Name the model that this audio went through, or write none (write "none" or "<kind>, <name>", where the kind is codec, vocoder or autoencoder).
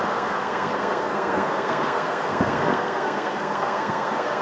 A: codec, SNAC